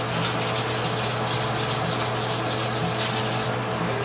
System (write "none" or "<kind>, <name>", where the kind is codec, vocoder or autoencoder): none